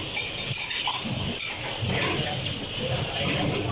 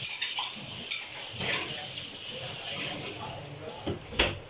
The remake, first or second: first